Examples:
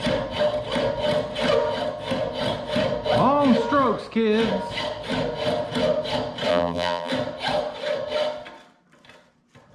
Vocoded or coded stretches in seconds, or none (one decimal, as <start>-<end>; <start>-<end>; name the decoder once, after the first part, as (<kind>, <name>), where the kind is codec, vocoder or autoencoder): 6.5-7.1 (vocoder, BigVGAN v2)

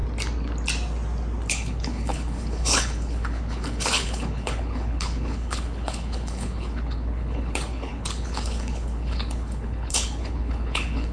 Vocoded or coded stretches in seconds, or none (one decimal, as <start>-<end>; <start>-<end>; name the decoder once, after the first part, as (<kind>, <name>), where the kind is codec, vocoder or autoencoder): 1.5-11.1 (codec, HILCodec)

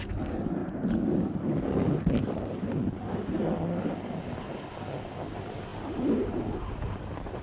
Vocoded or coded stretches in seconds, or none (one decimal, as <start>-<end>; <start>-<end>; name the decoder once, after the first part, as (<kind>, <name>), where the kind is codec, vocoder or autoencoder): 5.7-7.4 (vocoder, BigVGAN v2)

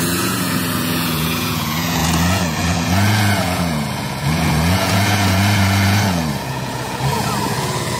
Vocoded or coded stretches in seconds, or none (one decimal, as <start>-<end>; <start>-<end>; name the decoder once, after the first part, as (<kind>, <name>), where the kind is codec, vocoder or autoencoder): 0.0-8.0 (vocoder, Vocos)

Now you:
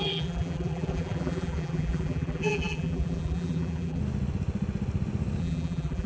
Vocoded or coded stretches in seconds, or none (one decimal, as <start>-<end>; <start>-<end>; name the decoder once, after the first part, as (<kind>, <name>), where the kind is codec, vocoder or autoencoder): 0.0-4.0 (vocoder, BigVGAN v2); 5.4-6.1